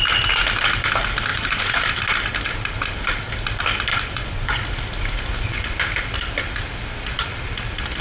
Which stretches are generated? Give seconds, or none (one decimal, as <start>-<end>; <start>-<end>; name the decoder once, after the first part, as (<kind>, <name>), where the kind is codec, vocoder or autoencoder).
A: 1.3-1.8 (vocoder, Vocos); 3.9-4.6